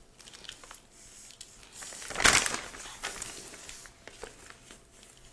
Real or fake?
real